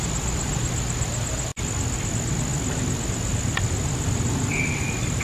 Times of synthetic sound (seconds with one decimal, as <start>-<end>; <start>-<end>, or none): none

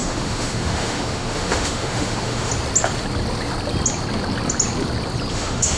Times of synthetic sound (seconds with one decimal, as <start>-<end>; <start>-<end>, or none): 0.0-2.5; 5.3-5.8

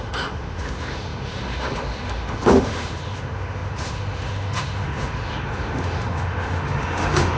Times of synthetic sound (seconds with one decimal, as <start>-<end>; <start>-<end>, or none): 0.0-7.4